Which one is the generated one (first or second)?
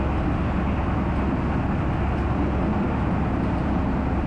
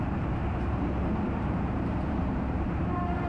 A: second